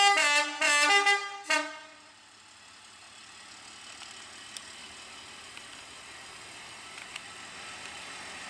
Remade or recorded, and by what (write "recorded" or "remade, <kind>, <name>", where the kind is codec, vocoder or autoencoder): recorded